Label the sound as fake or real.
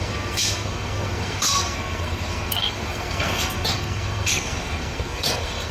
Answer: fake